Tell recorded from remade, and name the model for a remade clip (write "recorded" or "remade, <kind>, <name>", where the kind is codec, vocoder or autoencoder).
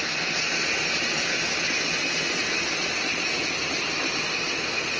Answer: recorded